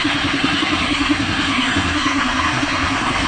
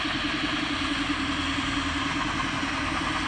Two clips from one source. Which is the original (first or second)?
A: second